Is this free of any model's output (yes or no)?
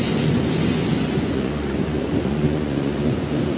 no